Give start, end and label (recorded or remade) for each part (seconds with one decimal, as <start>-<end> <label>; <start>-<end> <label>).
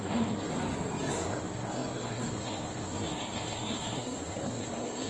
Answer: 0.0-0.5 remade; 0.5-1.1 recorded; 1.1-5.1 remade